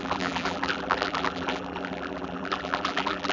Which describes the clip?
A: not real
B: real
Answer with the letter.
A